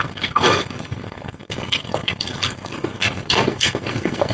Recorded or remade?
remade